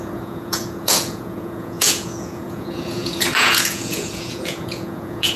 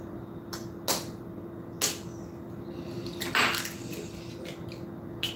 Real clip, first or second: second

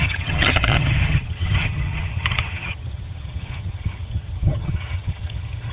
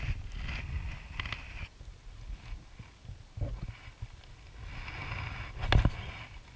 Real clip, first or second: second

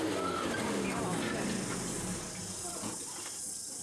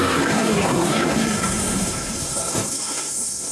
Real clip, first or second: first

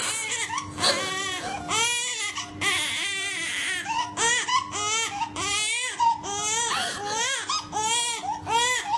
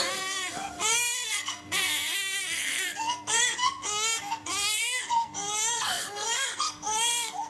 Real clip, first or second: first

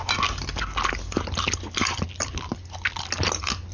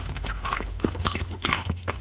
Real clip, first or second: first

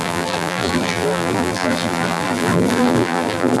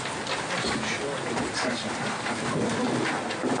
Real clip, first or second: second